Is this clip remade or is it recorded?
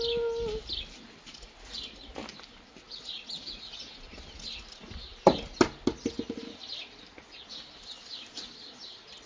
recorded